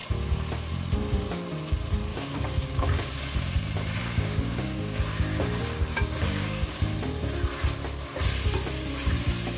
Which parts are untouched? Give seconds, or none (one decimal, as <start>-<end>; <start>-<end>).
0.0-2.1; 3.1-4.0; 6.8-9.6